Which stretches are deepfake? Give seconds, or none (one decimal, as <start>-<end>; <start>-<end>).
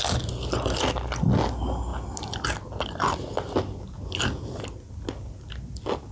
none